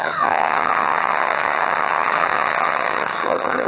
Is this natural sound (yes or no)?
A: no